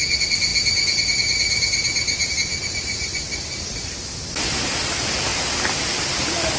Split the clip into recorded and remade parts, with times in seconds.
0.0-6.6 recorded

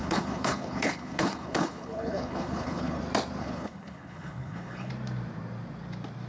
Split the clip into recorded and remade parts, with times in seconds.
0.0-3.0 remade; 3.0-3.4 recorded; 3.4-4.9 remade; 4.9-6.3 recorded

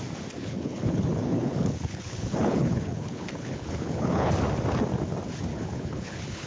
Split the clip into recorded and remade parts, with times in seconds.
0.0-0.4 recorded; 0.4-4.3 remade; 4.3-5.5 recorded; 5.5-6.5 remade

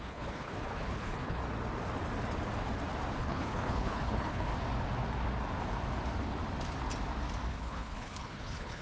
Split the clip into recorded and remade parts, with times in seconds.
0.0-1.4 remade; 1.4-3.2 recorded; 3.2-4.5 remade; 4.5-7.5 recorded; 7.5-8.8 remade